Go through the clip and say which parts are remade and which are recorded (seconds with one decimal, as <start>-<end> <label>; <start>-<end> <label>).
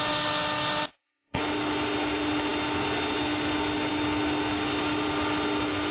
0.0-0.9 recorded; 0.9-1.4 remade; 1.4-5.9 recorded